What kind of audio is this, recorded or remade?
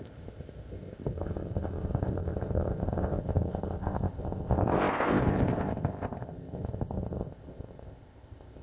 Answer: remade